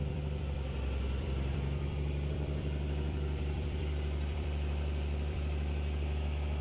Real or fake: fake